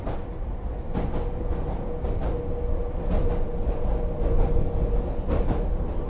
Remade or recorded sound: recorded